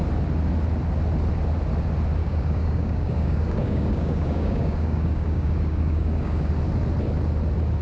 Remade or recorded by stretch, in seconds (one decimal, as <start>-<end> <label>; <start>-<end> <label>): 0.0-2.2 recorded; 2.2-6.5 remade; 6.5-7.8 recorded